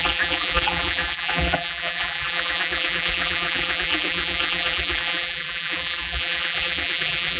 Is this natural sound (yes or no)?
no